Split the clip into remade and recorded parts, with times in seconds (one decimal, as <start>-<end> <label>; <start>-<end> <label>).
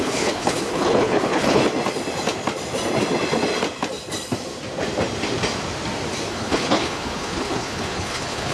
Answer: 0.0-1.6 remade; 1.6-6.3 recorded; 6.3-8.5 remade